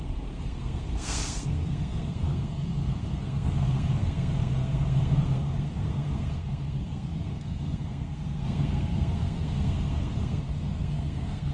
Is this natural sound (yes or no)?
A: no